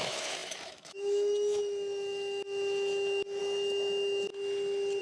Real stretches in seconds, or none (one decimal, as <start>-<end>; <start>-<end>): 4.3-5.0